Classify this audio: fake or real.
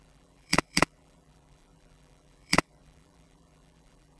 fake